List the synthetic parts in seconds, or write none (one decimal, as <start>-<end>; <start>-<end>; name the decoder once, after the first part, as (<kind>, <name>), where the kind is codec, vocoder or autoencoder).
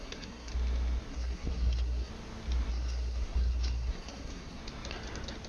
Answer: 0.0-0.5 (codec, SNAC); 1.1-2.1; 2.7-4.6